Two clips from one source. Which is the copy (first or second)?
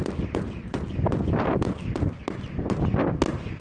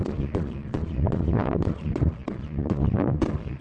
second